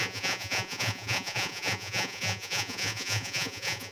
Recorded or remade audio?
remade